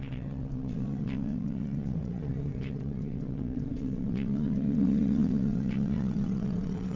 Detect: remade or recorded remade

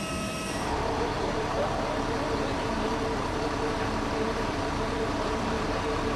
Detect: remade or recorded remade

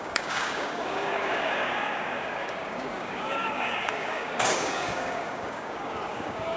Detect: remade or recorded remade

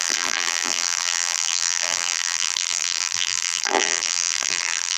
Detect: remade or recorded remade